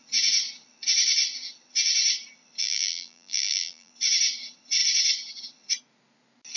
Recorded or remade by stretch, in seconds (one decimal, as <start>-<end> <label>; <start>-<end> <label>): 0.0-2.6 recorded; 2.6-3.9 remade; 3.9-6.6 recorded